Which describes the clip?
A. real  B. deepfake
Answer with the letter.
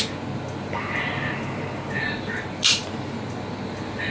A